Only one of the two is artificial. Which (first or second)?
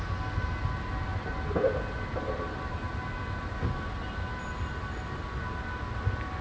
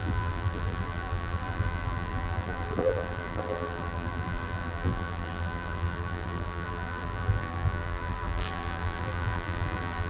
second